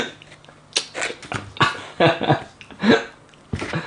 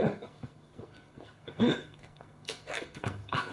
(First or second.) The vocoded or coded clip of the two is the second